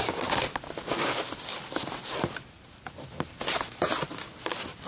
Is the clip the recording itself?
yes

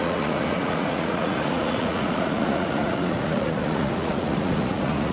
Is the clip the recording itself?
no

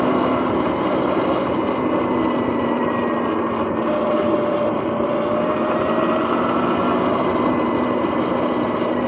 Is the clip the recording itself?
yes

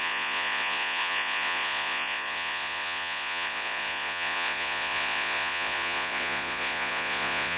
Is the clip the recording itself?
no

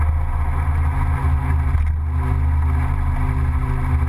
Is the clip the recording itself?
yes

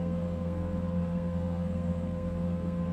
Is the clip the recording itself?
no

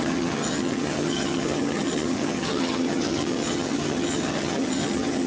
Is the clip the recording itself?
no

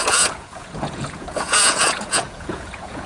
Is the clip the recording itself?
no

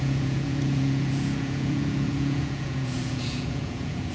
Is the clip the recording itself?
no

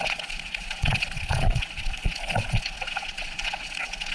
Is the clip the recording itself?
no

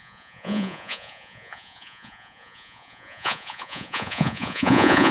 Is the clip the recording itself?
no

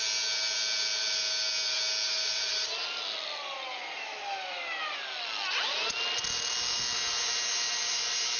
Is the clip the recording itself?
yes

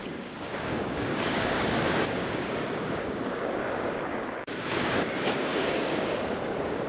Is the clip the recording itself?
no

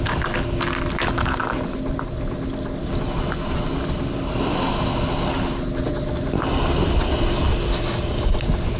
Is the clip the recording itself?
yes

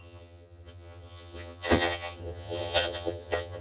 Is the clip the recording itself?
no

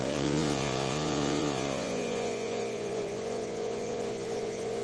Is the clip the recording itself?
no